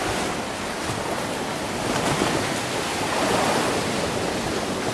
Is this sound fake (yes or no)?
no